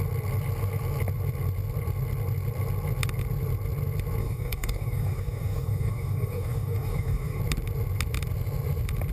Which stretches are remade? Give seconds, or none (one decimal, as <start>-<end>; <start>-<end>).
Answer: 4.2-7.4